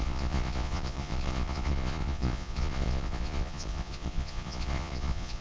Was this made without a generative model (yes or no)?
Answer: no